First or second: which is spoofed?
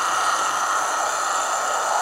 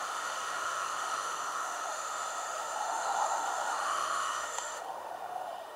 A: second